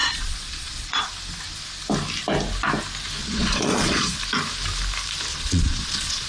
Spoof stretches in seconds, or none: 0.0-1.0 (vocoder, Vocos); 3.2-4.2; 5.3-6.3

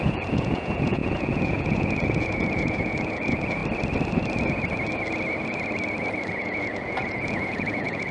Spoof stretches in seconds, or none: 0.0-3.6 (vocoder, Vocos); 6.3-8.1

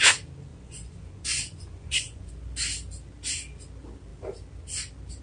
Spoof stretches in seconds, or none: 0.5-2.3 (vocoder, Vocos)

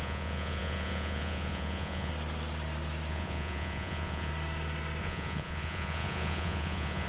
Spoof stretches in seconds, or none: 0.0-2.1 (vocoder, Vocos); 3.1-4.3; 5.0-7.1